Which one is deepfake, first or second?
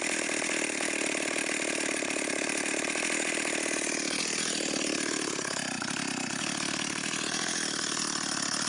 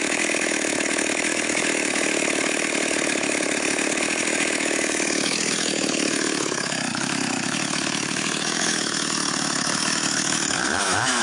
second